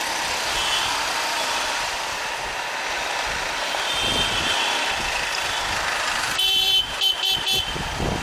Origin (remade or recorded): remade